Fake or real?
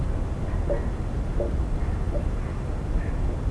real